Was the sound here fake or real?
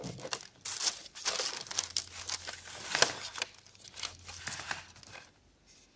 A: real